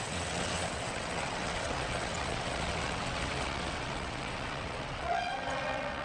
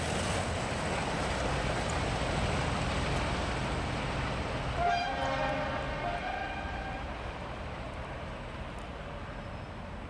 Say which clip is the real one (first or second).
second